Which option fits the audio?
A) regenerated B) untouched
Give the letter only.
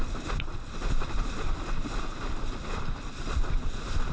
B